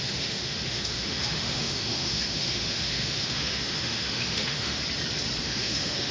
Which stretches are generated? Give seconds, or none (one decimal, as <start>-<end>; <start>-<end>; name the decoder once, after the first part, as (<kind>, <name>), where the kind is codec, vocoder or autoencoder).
0.0-4.8 (autoencoder, DAC-VAE); 5.4-6.1